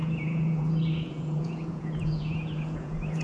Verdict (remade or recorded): remade